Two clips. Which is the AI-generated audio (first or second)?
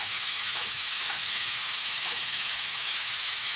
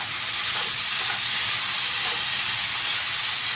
first